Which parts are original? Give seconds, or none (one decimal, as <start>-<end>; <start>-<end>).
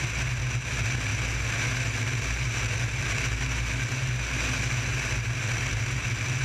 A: 0.0-6.4